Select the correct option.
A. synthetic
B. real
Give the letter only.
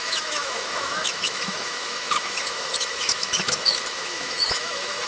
A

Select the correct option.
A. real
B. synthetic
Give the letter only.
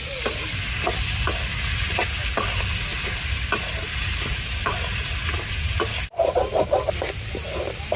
A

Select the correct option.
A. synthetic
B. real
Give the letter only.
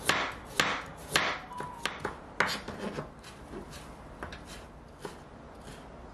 B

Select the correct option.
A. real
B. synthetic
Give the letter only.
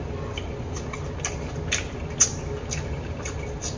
A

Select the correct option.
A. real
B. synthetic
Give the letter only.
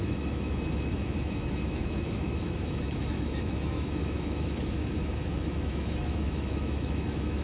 B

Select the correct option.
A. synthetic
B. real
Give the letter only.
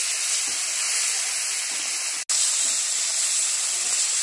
B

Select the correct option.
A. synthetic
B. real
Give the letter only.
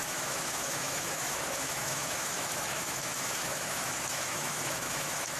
A